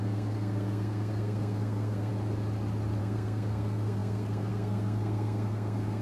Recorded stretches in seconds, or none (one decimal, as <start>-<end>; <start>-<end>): 2.1-3.0